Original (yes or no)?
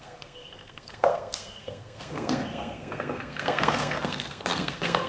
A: no